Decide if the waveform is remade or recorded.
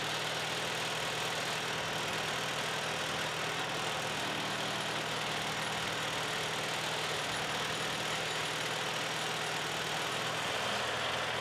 recorded